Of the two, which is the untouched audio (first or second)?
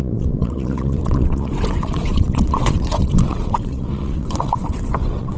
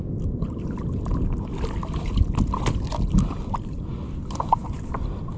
second